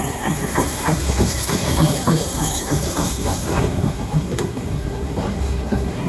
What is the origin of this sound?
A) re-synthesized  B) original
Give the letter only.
A